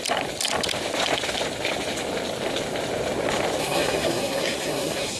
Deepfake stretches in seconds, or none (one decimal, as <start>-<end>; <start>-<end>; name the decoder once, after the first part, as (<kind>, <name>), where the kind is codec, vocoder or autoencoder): 3.6-5.2 (codec, SNAC)